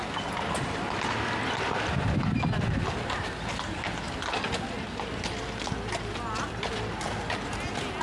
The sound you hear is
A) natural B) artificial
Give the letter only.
A